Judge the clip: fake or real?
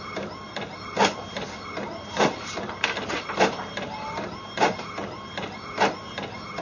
real